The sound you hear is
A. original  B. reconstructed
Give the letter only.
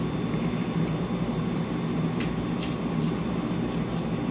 A